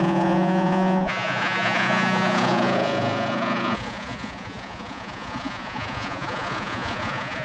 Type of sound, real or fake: fake